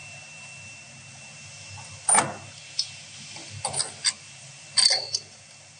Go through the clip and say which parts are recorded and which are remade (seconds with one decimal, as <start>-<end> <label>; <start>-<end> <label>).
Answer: 0.0-5.8 recorded